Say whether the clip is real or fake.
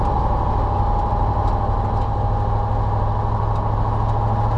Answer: real